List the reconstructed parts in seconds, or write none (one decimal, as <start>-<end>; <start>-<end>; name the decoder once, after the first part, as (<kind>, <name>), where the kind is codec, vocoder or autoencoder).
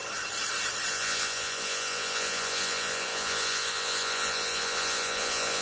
0.9-5.6 (vocoder, Vocos)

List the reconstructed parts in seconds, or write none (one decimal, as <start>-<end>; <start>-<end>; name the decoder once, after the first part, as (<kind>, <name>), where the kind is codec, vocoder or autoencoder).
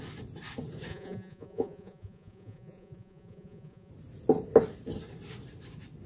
0.9-3.9 (vocoder, Vocos)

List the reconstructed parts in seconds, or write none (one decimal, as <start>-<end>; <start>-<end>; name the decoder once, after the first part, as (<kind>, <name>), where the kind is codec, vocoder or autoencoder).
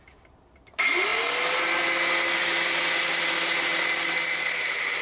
none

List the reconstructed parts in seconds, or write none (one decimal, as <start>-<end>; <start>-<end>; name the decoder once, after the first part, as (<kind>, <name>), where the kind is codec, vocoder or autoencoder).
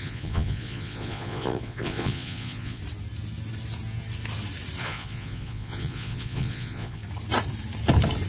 0.0-2.8 (vocoder, Vocos); 4.8-7.0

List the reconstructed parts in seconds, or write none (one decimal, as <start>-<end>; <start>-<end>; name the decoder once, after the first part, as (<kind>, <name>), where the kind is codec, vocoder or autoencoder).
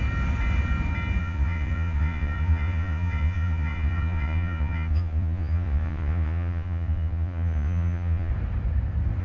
1.2-8.3 (vocoder, Vocos)